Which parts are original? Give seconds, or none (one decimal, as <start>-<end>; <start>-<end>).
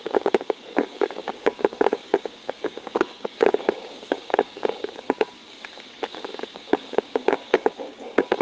none